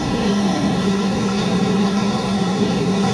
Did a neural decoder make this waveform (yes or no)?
yes